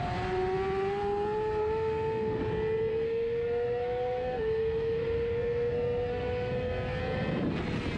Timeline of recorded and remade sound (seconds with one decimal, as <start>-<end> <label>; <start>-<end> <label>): 0.0-1.6 recorded; 1.6-2.4 remade; 2.4-2.9 recorded; 2.9-7.0 remade; 7.0-8.0 recorded